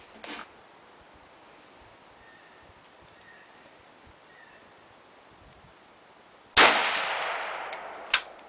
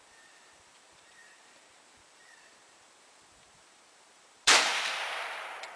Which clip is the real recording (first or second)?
first